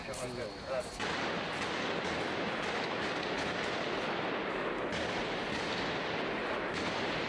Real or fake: real